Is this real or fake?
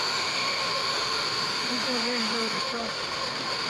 fake